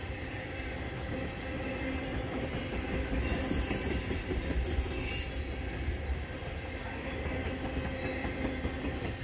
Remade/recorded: recorded